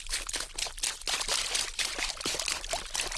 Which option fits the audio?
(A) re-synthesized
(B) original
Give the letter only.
B